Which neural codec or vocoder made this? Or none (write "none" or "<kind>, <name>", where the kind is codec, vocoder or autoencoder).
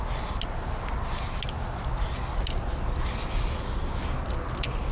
none